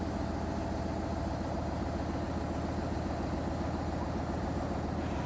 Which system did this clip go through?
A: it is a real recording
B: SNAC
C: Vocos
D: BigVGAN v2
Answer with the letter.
A